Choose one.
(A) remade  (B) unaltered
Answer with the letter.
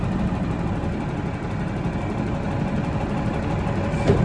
B